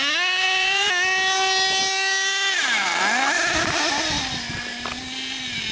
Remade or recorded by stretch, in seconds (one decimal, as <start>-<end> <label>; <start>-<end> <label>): 0.0-0.4 recorded; 0.4-0.9 remade; 0.9-5.7 recorded